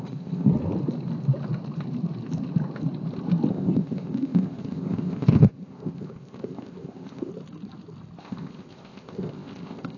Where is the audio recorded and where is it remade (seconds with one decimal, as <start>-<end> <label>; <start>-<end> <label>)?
0.0-0.5 remade; 0.5-3.5 recorded; 3.5-7.3 remade; 7.3-8.2 recorded; 8.2-10.0 remade